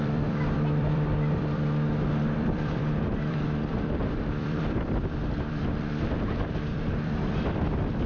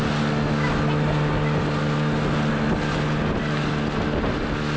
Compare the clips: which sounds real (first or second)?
second